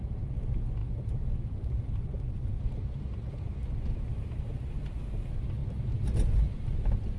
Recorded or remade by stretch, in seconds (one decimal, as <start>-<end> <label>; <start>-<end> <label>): 0.0-7.2 recorded